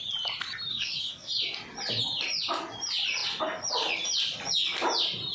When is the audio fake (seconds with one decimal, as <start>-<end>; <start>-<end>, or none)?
0.7-1.3